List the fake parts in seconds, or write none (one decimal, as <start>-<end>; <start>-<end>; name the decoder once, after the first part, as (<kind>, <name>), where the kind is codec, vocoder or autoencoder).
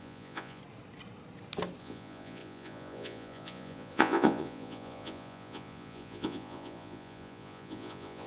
0.0-0.6 (vocoder, Vocos); 1.8-8.3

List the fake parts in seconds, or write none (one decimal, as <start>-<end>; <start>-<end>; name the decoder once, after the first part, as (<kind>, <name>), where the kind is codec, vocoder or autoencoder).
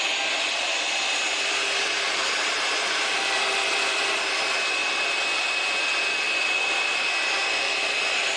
none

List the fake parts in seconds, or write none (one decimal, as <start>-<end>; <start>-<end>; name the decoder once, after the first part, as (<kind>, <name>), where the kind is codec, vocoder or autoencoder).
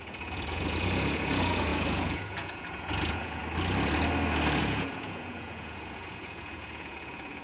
0.0-3.4 (vocoder, Vocos); 4.6-7.4